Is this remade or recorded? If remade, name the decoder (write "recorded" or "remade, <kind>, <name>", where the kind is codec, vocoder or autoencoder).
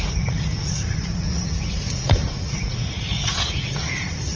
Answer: remade, vocoder, Vocos